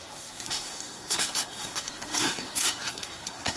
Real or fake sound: fake